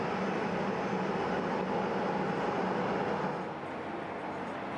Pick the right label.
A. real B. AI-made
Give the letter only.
A